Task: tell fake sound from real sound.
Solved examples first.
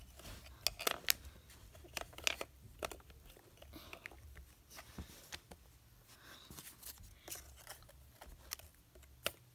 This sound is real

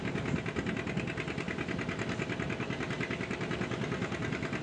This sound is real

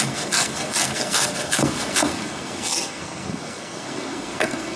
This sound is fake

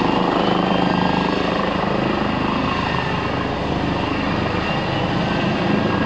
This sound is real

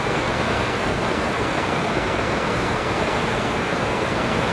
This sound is fake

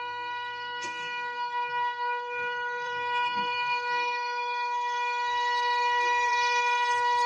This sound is fake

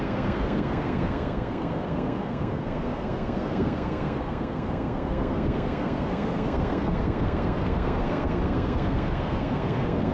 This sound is fake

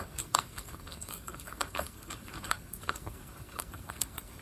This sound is fake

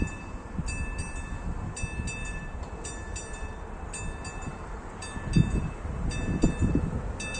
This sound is real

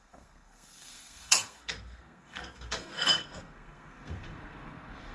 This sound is fake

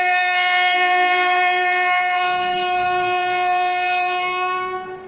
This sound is fake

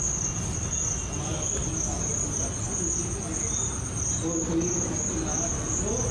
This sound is real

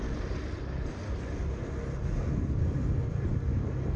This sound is real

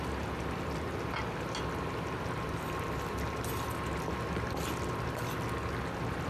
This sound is real